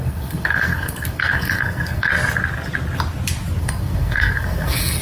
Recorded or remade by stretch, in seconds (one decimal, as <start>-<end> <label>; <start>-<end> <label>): 0.0-2.1 remade; 2.1-3.6 recorded; 3.6-5.0 remade

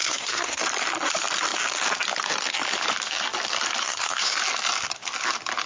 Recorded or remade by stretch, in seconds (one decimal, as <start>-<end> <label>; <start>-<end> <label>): 0.0-0.6 remade; 0.6-3.8 recorded; 3.8-4.4 remade; 4.4-5.7 recorded

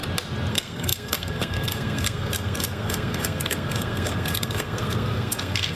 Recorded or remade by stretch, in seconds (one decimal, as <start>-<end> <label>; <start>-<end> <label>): 0.0-0.5 recorded; 0.5-5.8 remade

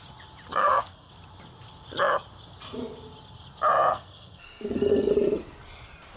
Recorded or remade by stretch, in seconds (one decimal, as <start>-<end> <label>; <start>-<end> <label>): 0.0-0.6 recorded; 0.6-1.1 remade; 1.1-3.9 recorded; 3.9-5.1 remade; 5.1-6.2 recorded

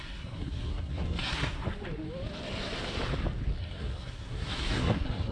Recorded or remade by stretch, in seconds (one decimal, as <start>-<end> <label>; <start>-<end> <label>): 0.0-1.6 remade; 1.6-3.6 recorded; 3.6-5.3 remade

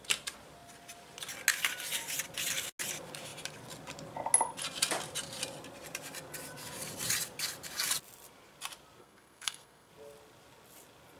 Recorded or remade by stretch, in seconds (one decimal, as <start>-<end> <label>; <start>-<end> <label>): 0.0-9.0 recorded; 9.0-9.9 remade; 9.9-11.2 recorded

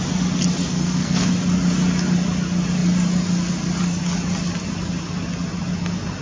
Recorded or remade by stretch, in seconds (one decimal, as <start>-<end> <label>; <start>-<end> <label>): 0.0-0.7 recorded; 0.7-1.3 remade; 1.3-6.2 recorded

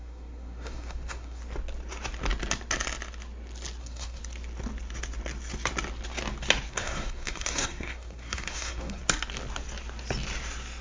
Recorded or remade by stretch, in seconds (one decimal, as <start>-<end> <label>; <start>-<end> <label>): 0.0-1.4 remade; 1.4-3.8 recorded; 3.8-4.2 remade; 4.2-6.7 recorded; 6.7-9.0 remade; 9.0-10.8 recorded